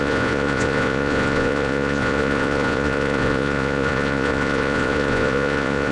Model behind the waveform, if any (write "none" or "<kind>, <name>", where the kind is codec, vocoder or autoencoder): vocoder, Vocos